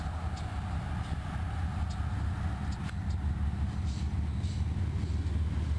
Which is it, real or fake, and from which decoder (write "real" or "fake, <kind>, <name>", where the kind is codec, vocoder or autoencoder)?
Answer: real